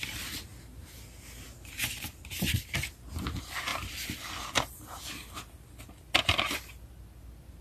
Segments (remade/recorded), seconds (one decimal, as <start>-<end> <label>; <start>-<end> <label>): 0.0-7.6 recorded